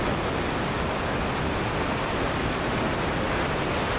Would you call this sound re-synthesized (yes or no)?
no